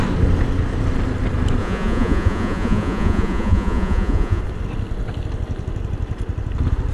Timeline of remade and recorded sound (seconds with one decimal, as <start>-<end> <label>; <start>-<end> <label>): 0.0-1.6 recorded; 1.6-4.4 remade; 4.4-6.9 recorded